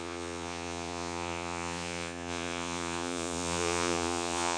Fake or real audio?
fake